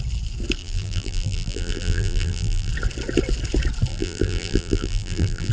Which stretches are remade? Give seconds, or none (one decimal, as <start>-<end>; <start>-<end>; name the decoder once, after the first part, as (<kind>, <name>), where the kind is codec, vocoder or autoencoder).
0.6-2.7 (vocoder, BigVGAN v2); 3.9-5.5